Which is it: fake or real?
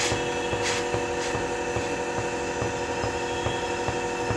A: real